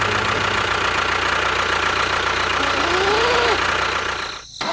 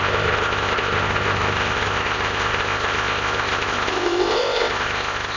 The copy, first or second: second